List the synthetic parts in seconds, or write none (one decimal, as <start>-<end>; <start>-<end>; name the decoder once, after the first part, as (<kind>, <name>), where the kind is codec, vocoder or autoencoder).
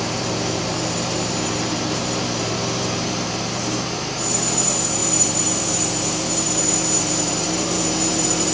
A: 0.0-8.5 (vocoder, BigVGAN v2)